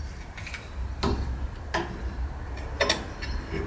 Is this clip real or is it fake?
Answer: real